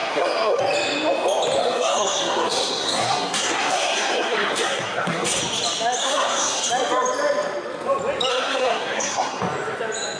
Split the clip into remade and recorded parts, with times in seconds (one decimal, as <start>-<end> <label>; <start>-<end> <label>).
0.0-0.6 remade; 0.6-1.6 recorded; 1.6-5.4 remade; 5.4-6.0 recorded; 6.0-6.7 remade; 6.7-8.3 recorded; 8.3-9.4 remade; 9.4-10.2 recorded